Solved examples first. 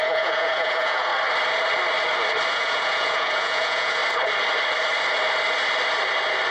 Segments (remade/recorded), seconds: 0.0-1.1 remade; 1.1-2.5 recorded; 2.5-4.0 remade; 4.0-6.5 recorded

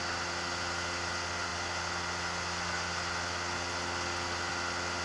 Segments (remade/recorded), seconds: 0.0-5.0 recorded

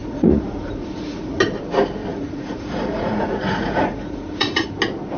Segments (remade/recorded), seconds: 0.0-1.4 remade; 1.4-2.1 recorded; 2.1-4.7 remade; 4.7-5.2 recorded

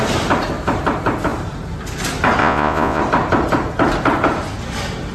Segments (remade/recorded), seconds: 0.0-2.4 recorded; 2.4-3.0 remade; 3.0-5.1 recorded

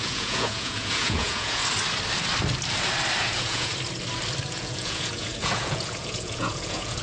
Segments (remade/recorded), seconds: 0.0-1.6 remade; 1.6-3.2 recorded; 3.2-3.7 remade; 3.7-4.5 recorded; 4.5-7.0 remade

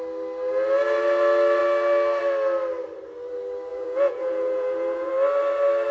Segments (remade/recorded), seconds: 0.0-3.7 recorded; 3.7-5.1 remade; 5.1-5.9 recorded

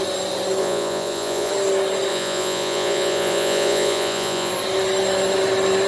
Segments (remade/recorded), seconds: 0.0-0.6 recorded; 0.6-1.5 remade; 1.5-2.1 recorded; 2.1-4.5 remade; 4.5-5.9 recorded

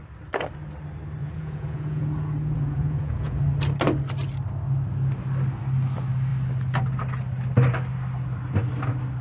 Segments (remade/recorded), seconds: 0.0-1.2 recorded; 1.2-3.4 remade; 3.4-9.2 recorded